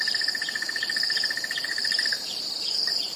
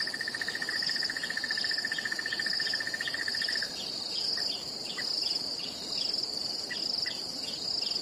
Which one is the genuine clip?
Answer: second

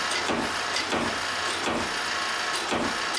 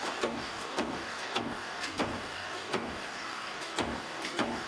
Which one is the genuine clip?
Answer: first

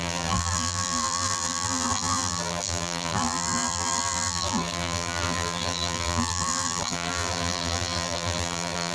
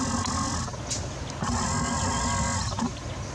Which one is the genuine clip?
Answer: second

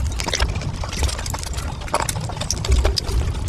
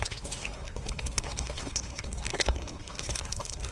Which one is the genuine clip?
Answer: first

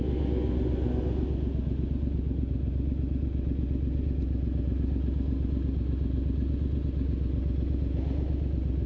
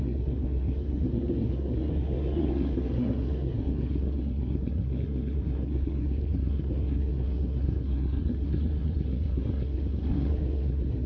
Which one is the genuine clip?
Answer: first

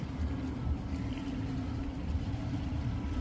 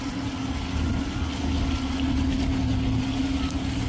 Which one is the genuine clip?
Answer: second